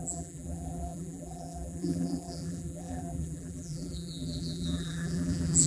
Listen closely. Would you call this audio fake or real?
fake